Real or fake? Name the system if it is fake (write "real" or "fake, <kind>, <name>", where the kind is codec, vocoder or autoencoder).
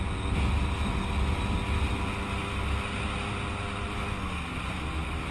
real